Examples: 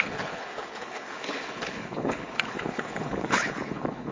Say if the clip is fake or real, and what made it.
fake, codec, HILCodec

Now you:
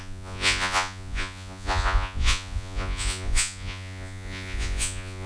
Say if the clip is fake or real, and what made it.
fake, vocoder, Vocos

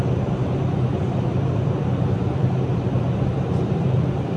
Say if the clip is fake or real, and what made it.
fake, vocoder, BigVGAN v2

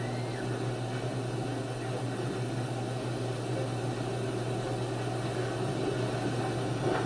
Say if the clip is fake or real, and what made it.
real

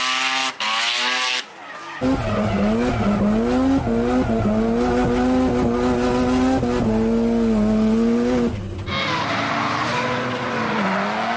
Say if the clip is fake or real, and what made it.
real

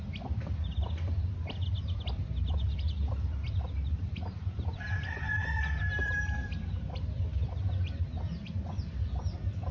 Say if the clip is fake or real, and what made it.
fake, vocoder, BigVGAN v2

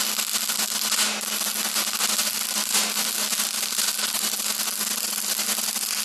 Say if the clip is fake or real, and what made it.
real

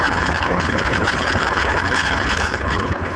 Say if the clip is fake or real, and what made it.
fake, codec, HILCodec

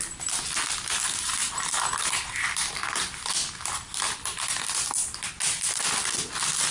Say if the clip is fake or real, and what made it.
real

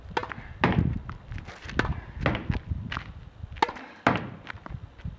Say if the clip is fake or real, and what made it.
real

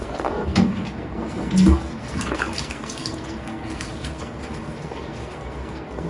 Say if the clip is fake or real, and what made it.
fake, codec, SNAC